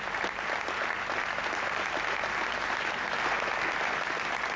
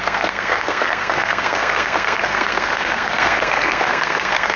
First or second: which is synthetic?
second